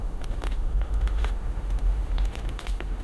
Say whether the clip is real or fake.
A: fake